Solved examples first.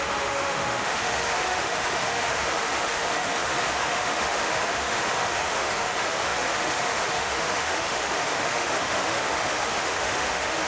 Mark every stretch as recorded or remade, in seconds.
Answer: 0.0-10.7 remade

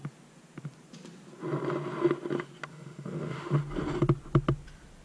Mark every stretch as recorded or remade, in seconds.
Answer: 0.0-2.7 recorded; 2.7-3.6 remade; 3.6-5.0 recorded

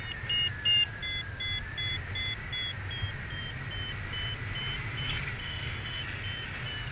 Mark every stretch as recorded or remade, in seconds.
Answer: 0.0-5.4 recorded; 5.4-6.0 remade; 6.0-6.9 recorded

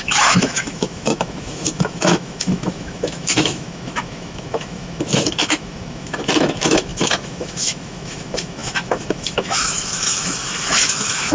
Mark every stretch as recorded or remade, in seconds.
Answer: 0.0-11.3 remade

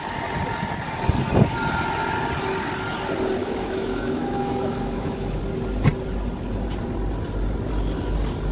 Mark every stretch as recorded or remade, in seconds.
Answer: 0.0-3.4 recorded; 3.4-5.4 remade; 5.4-8.5 recorded

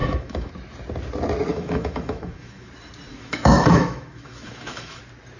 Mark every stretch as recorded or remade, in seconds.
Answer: 0.0-0.5 remade; 0.5-1.5 recorded; 1.5-2.7 remade; 2.7-3.1 recorded; 3.1-5.0 remade; 5.0-5.4 recorded

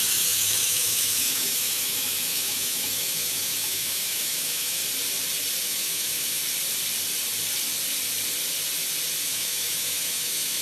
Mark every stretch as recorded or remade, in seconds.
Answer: 0.0-4.8 remade; 4.8-5.6 recorded; 5.6-6.4 remade; 6.4-9.3 recorded; 9.3-10.6 remade